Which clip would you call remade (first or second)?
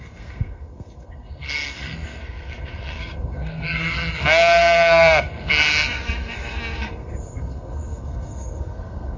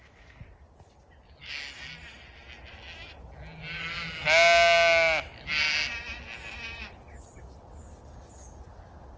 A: first